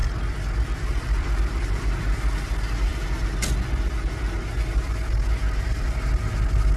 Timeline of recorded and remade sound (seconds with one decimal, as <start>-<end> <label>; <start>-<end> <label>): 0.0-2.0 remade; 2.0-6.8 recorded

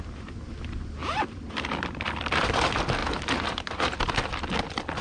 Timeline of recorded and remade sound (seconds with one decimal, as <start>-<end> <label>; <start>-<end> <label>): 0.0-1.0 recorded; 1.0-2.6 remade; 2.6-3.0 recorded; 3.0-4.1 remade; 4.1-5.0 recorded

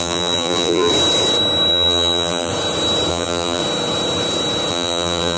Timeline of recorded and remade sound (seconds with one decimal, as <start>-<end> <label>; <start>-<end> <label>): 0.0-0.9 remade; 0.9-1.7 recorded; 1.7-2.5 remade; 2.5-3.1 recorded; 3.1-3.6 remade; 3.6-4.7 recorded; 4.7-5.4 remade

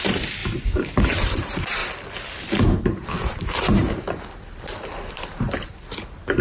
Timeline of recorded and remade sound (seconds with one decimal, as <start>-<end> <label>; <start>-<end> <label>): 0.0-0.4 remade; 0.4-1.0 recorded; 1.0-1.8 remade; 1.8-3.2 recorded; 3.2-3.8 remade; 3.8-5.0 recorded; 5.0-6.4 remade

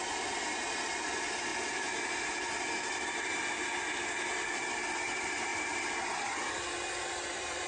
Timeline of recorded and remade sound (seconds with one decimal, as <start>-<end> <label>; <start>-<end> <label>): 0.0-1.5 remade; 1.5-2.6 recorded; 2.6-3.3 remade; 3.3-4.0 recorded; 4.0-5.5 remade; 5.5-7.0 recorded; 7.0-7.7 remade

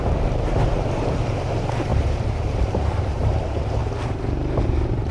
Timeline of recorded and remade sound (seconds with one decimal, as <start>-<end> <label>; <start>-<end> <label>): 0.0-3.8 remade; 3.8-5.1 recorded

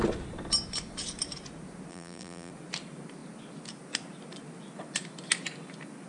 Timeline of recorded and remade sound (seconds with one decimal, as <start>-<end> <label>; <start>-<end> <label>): 0.0-1.9 recorded; 1.9-2.5 remade; 2.5-6.1 recorded